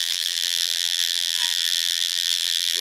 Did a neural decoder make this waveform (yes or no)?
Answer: yes